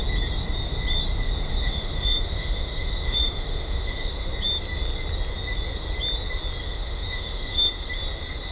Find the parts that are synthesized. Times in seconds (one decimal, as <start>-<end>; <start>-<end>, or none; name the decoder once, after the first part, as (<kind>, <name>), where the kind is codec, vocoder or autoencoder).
1.5-4.1 (autoencoder, DAC-VAE); 6.6-7.9